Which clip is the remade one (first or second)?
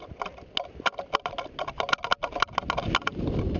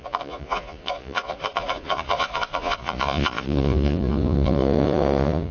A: second